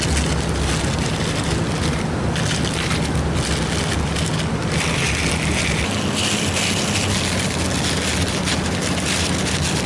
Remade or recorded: recorded